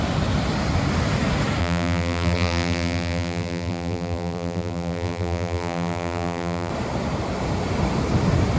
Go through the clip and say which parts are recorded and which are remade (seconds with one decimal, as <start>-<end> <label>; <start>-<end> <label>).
0.0-1.6 recorded; 1.6-6.7 remade; 6.7-8.6 recorded